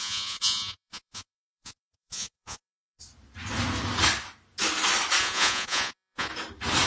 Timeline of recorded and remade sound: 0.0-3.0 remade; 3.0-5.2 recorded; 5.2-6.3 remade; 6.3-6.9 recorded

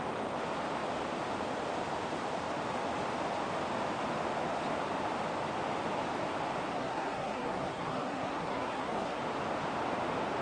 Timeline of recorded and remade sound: 0.0-6.7 recorded; 6.7-9.2 remade; 9.2-10.4 recorded

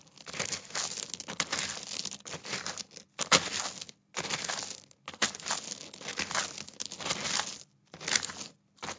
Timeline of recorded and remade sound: 0.0-9.0 recorded

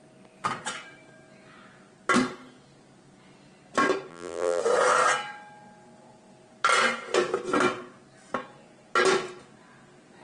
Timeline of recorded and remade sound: 0.0-4.1 recorded; 4.1-4.6 remade; 4.6-10.2 recorded

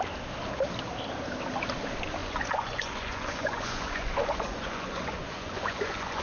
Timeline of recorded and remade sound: 0.0-2.2 recorded; 2.2-6.2 remade

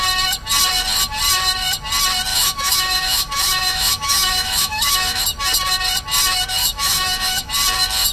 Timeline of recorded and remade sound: 0.0-2.3 recorded; 2.3-5.2 remade; 5.2-6.6 recorded; 6.6-7.5 remade; 7.5-8.1 recorded